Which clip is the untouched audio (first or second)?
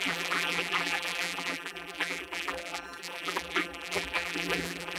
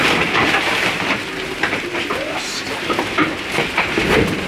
second